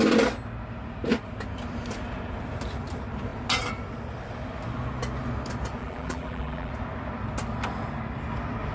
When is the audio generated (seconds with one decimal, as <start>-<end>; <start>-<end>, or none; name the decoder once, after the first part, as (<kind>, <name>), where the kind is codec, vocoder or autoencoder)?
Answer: 5.8-6.7 (vocoder, BigVGAN v2)